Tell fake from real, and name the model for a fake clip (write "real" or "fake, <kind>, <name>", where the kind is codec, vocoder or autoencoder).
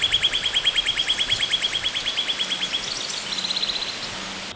real